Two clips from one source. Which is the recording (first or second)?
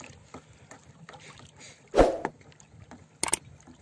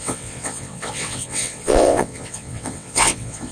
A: first